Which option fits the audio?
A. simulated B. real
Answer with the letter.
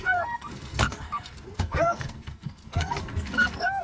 A